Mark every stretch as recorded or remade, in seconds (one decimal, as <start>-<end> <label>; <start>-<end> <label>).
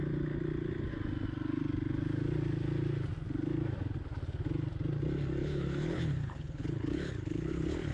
0.0-5.4 recorded; 5.4-7.9 remade